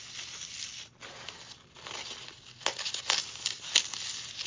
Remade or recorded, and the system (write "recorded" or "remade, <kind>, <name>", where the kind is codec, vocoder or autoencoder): recorded